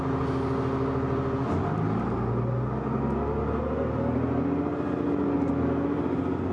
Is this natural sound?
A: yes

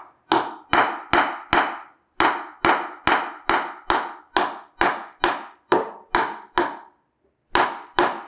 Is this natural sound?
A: yes